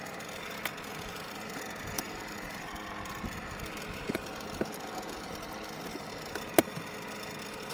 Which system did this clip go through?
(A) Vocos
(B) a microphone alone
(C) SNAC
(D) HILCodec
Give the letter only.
B